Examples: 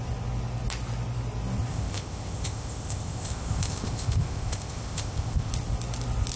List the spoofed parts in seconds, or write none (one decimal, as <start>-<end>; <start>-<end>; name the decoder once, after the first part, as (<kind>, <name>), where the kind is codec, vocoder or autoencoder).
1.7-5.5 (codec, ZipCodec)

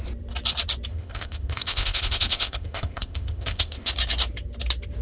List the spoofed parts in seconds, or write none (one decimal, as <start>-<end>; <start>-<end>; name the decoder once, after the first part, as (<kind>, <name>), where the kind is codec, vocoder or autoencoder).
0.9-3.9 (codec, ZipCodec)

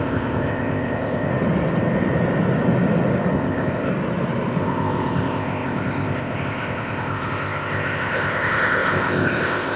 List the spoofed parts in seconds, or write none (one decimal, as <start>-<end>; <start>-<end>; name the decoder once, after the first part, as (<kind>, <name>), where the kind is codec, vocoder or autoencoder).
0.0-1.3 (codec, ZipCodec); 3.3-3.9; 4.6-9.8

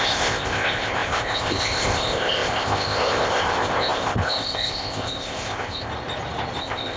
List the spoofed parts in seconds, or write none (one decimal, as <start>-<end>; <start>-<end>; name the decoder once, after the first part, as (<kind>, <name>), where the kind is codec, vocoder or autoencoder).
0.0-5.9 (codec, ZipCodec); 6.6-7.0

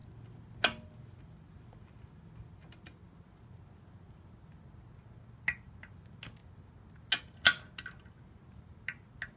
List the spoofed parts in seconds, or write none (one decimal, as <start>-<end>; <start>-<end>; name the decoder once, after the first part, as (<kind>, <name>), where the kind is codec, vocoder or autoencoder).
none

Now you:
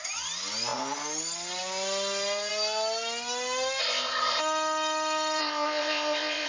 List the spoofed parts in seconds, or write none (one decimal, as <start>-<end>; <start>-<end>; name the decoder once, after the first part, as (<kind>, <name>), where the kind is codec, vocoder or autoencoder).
3.8-4.4 (codec, ZipCodec); 5.4-6.5

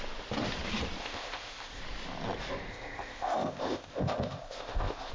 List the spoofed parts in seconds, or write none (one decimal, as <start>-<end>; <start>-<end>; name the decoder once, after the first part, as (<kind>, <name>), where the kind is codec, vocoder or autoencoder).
1.0-1.8 (codec, ZipCodec); 2.7-5.1

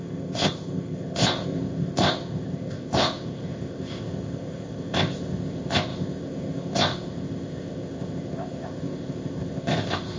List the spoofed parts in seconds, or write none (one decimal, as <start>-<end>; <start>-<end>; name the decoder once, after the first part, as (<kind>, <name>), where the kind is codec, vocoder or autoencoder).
0.0-10.2 (codec, ZipCodec)